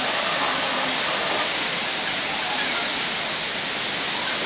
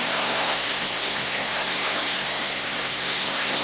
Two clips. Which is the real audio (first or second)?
first